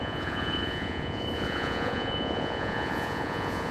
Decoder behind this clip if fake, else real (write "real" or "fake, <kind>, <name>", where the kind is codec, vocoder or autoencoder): fake, vocoder, Vocos